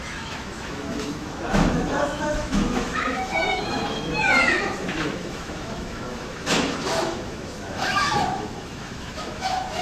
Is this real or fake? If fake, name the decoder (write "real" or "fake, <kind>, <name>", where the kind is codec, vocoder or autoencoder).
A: fake, autoencoder, DAC-VAE